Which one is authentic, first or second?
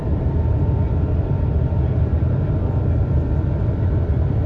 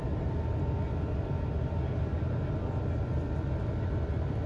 second